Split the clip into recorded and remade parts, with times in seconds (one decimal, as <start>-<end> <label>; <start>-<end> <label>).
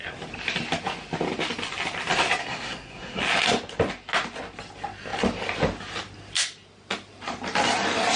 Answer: 0.0-2.4 recorded; 2.4-3.2 remade; 3.2-8.2 recorded